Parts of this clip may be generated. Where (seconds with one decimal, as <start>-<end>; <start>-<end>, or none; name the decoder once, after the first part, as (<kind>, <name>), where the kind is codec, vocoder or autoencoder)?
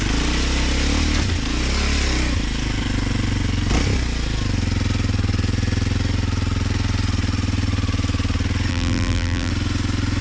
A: 8.7-9.5 (vocoder, BigVGAN v2)